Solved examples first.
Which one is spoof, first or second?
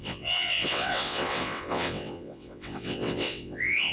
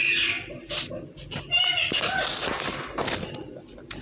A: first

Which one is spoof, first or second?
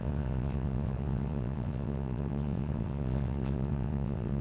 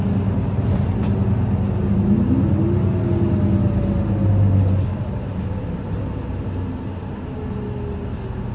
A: first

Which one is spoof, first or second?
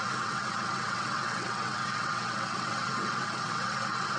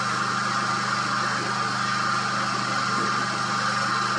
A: first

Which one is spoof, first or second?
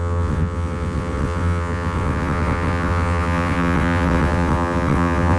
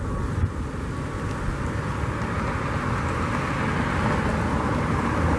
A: first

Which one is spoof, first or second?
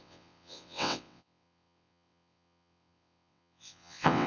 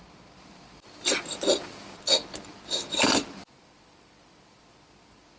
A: first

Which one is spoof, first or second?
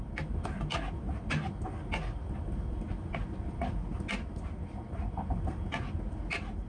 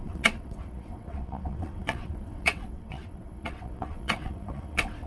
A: second